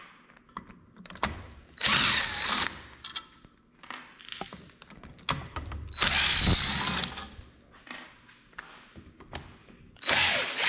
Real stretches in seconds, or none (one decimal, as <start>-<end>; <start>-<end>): 0.0-9.6